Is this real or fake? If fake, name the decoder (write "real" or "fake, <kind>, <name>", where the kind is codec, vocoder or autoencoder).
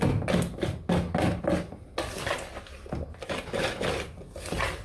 real